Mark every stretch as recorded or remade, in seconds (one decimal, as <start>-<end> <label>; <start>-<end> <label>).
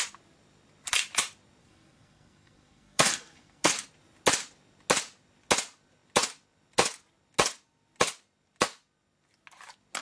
0.0-1.6 recorded; 1.6-3.7 remade; 3.7-10.0 recorded